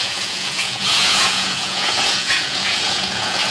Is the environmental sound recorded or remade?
remade